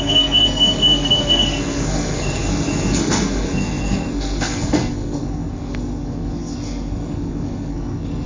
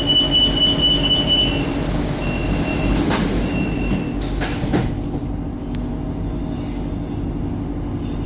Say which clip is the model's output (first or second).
first